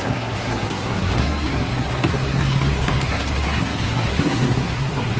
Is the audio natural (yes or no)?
no